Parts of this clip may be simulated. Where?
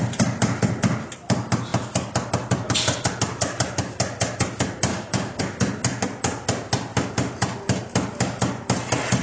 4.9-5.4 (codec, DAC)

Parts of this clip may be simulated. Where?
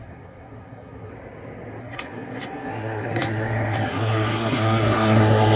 0.0-1.1 (codec, SNAC); 1.8-5.6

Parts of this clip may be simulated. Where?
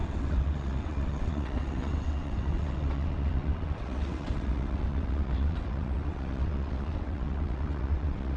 0.0-8.4 (vocoder, WaveNeXt)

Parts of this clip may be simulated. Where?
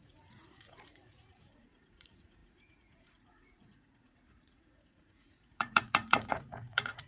0.0-7.1 (vocoder, Vocos)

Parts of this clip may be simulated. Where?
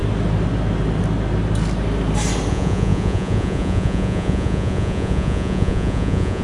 2.5-6.4 (vocoder, Vocos)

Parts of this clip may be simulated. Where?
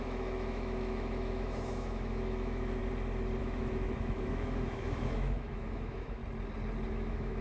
0.0-2.8 (autoencoder, DAC-VAE); 3.4-6.2; 6.9-7.4